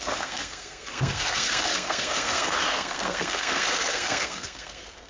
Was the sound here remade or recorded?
remade